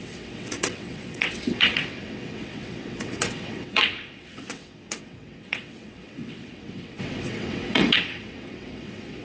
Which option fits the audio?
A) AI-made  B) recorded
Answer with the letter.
A